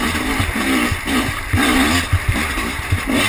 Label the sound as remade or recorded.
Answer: recorded